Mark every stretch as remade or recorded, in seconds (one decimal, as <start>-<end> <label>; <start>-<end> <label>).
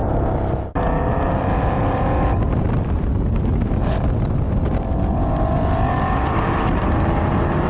0.0-1.0 recorded; 1.0-7.7 remade